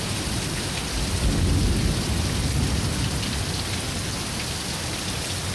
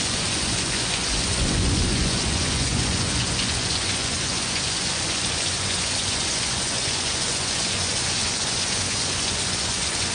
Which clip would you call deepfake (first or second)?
second